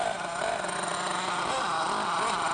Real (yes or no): no